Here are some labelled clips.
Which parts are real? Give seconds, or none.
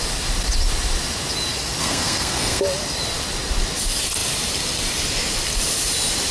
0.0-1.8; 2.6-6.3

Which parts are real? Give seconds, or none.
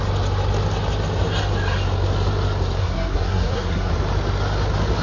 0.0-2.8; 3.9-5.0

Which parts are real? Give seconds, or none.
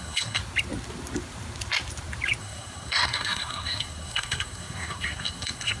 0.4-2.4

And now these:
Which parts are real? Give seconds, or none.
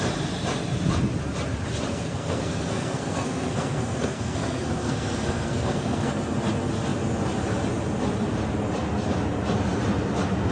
0.0-1.9; 6.1-10.5